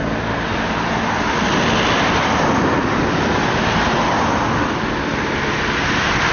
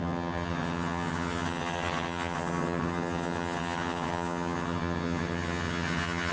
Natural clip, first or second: first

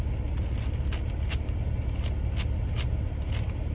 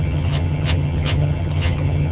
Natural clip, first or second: first